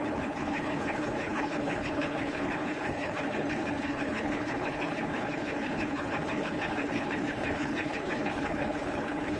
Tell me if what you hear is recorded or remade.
remade